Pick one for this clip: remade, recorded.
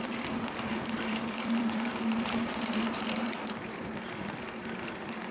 remade